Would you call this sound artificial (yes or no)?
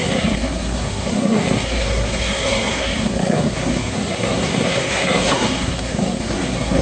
yes